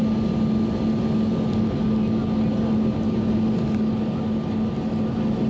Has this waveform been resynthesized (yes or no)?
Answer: no